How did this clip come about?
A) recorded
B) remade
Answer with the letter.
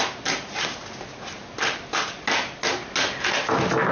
A